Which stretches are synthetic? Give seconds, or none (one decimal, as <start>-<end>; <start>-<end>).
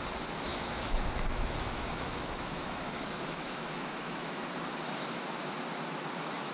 0.5-4.4